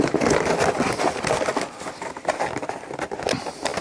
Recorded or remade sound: recorded